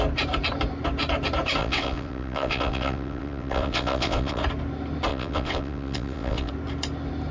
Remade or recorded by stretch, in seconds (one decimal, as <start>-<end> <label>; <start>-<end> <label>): 0.0-1.6 recorded; 1.6-4.4 remade; 4.4-5.1 recorded; 5.1-6.5 remade; 6.5-7.3 recorded